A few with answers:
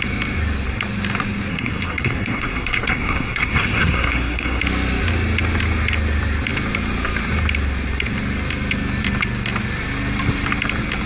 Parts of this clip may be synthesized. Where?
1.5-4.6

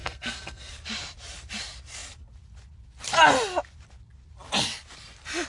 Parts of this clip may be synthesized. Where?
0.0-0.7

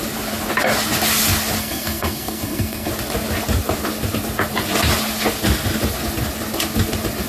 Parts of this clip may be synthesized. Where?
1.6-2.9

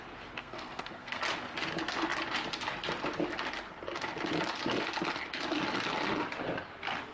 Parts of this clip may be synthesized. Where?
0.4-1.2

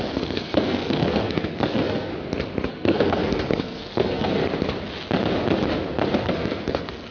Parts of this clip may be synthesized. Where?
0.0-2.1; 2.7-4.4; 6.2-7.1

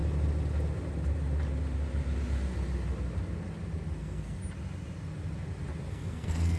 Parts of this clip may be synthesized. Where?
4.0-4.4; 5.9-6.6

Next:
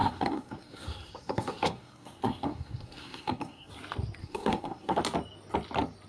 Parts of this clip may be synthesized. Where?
0.0-3.7; 4.2-5.0